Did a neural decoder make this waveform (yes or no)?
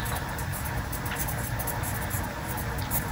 no